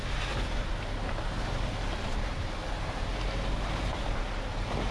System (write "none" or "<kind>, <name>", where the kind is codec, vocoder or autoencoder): none